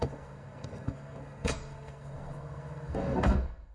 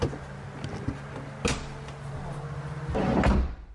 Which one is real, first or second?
second